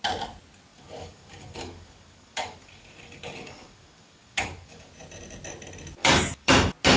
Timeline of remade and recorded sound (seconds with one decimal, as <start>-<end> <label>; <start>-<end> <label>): 0.0-0.7 recorded; 0.7-4.9 remade; 4.9-6.0 recorded; 6.0-6.5 remade; 6.5-7.0 recorded